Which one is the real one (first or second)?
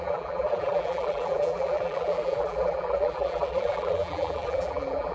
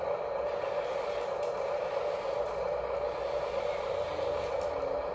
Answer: second